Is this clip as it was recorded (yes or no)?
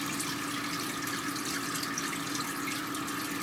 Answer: yes